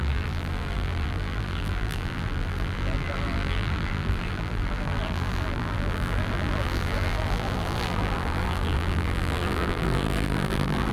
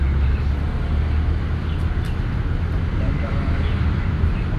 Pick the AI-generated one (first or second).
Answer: first